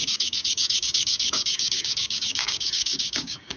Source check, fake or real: fake